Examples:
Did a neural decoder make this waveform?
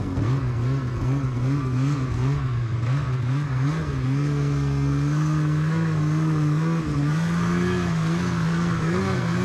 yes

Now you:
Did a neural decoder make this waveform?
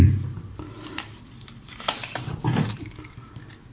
yes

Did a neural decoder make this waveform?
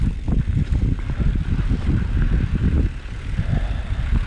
no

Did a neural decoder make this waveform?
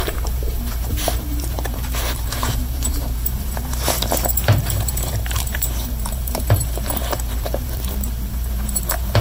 yes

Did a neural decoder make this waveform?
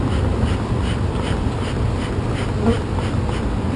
yes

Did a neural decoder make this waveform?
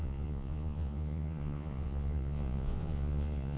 yes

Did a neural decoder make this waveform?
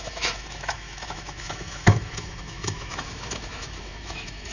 yes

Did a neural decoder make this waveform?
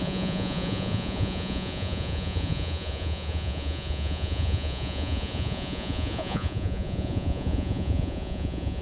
yes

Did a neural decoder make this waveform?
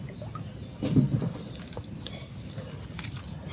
no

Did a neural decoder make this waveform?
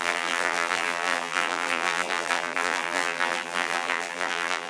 yes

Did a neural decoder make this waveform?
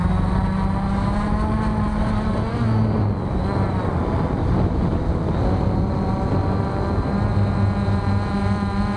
no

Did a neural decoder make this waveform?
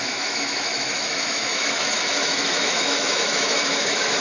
yes